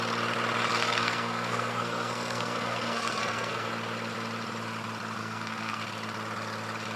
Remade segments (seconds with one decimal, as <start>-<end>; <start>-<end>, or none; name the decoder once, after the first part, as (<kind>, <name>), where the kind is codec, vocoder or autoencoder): 0.8-3.7 (codec, SNAC); 5.2-5.8